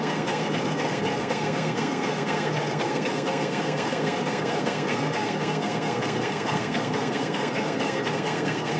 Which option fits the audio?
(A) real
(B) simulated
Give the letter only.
B